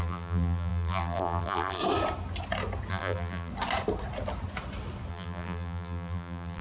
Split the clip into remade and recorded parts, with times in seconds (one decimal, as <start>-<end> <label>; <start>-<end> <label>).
0.0-1.8 remade; 1.8-2.9 recorded; 2.9-3.5 remade; 3.5-5.1 recorded; 5.1-6.6 remade